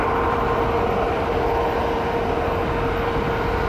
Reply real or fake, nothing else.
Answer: real